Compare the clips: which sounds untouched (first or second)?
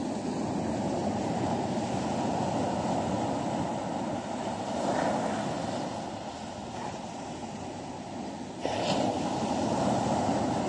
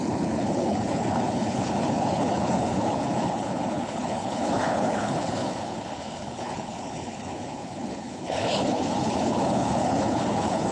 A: first